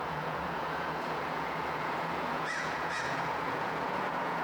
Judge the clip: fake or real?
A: fake